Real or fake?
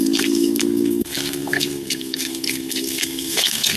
fake